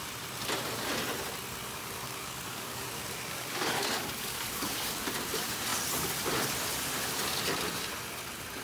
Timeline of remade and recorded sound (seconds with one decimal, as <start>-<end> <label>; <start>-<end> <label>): 0.0-1.6 recorded; 1.6-5.0 remade; 5.0-8.6 recorded